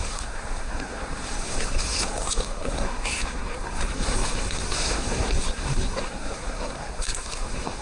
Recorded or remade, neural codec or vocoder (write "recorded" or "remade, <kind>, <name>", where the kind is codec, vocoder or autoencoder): remade, codec, SNAC